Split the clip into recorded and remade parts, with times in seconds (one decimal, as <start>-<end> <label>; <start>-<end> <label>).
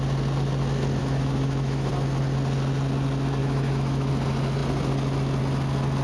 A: 0.0-1.0 recorded; 1.0-1.9 remade; 1.9-3.4 recorded; 3.4-4.1 remade; 4.1-6.0 recorded